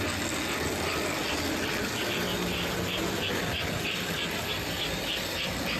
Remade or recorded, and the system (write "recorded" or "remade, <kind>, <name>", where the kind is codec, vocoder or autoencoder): recorded